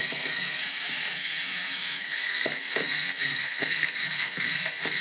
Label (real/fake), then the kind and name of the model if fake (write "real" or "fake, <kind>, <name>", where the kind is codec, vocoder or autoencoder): fake, codec, SNAC